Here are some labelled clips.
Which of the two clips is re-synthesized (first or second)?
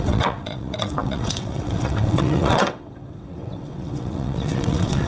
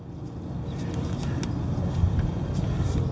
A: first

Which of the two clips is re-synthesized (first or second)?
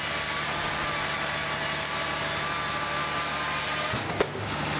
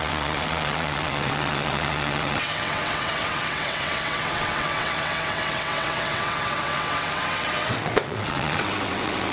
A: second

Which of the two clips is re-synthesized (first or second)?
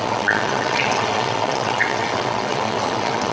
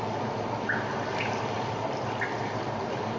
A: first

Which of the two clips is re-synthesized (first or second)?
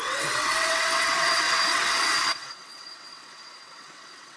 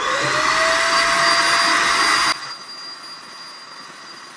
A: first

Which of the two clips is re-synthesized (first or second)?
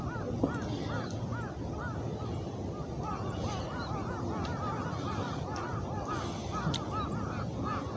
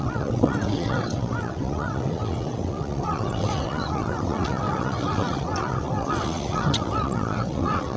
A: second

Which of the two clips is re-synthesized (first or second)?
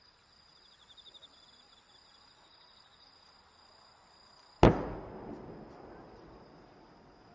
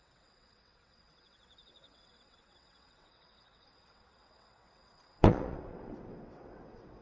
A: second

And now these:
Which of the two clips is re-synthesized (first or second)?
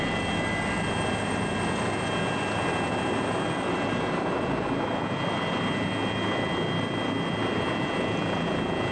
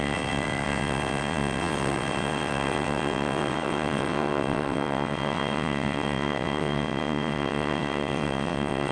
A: second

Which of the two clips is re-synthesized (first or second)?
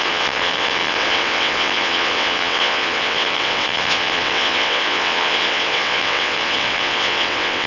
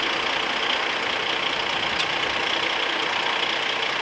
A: first